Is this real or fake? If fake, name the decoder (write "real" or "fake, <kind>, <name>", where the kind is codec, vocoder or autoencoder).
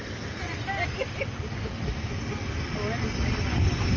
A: real